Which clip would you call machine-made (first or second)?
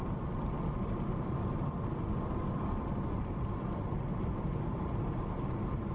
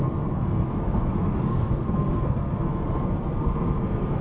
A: second